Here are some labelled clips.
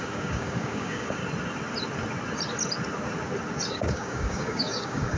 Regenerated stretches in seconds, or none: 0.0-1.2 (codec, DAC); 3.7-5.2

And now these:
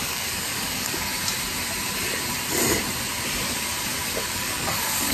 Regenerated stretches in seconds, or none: 0.0-1.1 (codec, DAC); 4.2-5.1

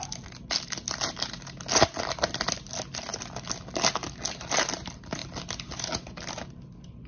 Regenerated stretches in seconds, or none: none

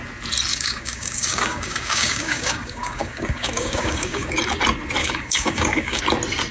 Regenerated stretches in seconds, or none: 0.5-4.4 (codec, DAC); 5.0-6.0